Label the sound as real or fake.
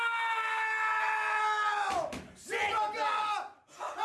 real